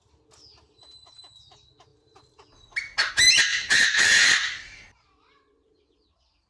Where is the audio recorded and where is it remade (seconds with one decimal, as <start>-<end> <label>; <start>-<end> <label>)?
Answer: 0.0-3.5 recorded; 3.5-4.1 remade; 4.1-6.5 recorded